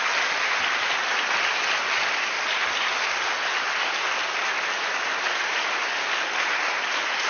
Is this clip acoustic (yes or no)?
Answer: yes